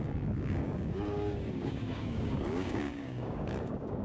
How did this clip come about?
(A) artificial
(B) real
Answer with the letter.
A